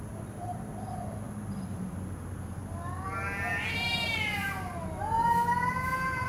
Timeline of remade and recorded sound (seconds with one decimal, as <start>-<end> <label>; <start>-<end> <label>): 0.0-0.7 remade; 0.7-1.7 recorded; 1.7-2.6 remade; 2.6-3.5 recorded; 3.5-6.3 remade